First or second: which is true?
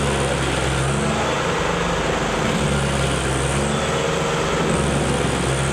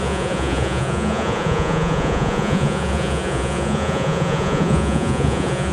first